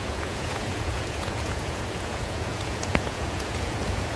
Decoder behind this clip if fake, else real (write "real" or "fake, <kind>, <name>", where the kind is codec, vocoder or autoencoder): fake, vocoder, Vocos